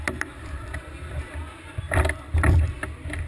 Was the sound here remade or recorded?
remade